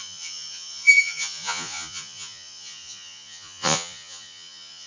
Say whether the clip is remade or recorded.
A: remade